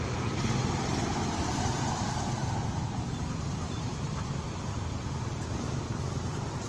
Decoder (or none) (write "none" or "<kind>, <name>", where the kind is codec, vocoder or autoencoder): vocoder, BigVGAN v2